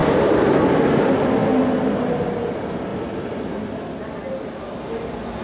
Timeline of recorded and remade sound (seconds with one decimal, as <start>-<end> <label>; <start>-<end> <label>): 0.0-0.7 remade; 0.7-2.9 recorded; 2.9-3.9 remade; 3.9-5.4 recorded